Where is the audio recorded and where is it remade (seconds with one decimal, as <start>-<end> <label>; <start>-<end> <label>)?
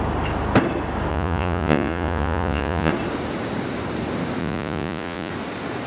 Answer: 0.0-1.1 recorded; 1.1-2.9 remade; 2.9-4.4 recorded; 4.4-5.3 remade; 5.3-5.9 recorded